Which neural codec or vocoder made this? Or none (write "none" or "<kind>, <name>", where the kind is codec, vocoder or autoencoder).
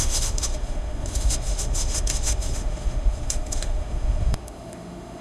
autoencoder, DAC-VAE